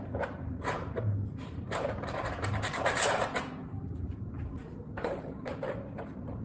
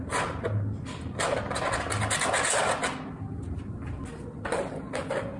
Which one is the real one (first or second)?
second